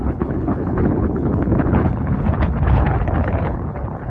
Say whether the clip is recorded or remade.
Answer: remade